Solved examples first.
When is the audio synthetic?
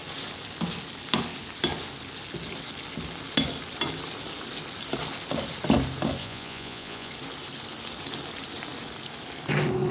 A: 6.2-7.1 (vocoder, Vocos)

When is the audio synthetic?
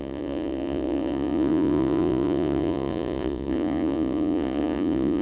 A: 0.0-5.2 (vocoder, Vocos)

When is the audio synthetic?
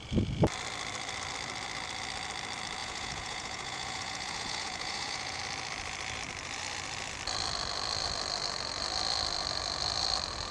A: 2.8-5.4 (vocoder, Vocos)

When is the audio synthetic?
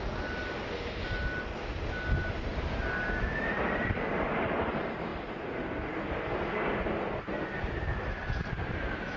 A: none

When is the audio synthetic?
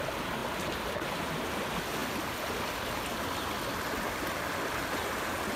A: none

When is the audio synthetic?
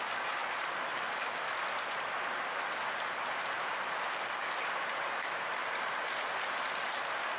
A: none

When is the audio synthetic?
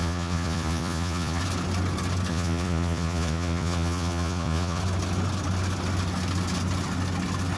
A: 0.0-1.4 (vocoder, Vocos); 2.3-4.8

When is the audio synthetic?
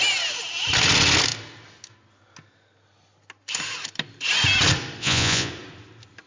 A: 5.0-5.5 (vocoder, Vocos)